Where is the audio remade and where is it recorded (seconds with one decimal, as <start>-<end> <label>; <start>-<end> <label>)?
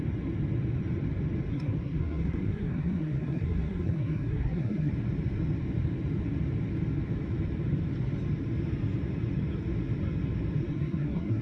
0.0-1.5 recorded; 1.5-4.9 remade; 4.9-10.7 recorded; 10.7-11.4 remade